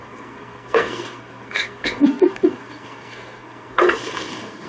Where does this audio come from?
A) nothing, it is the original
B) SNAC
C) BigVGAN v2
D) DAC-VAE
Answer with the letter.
B